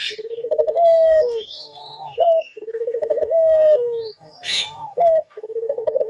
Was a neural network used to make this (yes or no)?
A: yes